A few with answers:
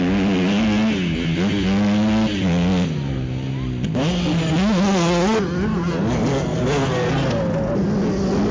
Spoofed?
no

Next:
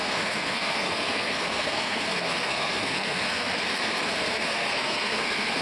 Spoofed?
yes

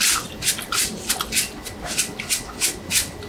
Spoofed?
no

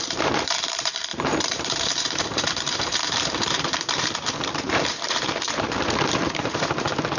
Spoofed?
yes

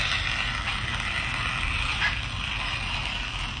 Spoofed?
no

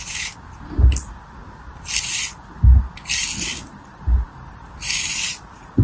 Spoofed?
no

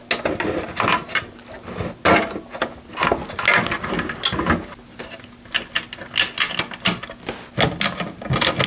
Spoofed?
no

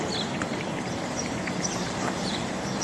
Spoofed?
yes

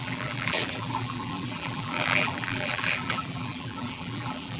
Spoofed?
yes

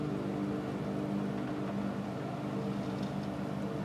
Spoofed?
no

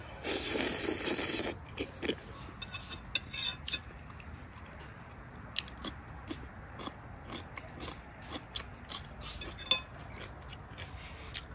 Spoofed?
no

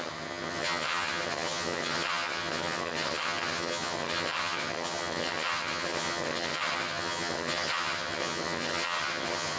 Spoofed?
yes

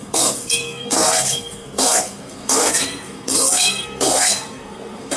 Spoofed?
yes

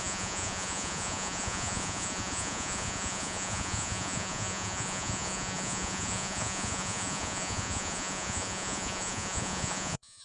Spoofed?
yes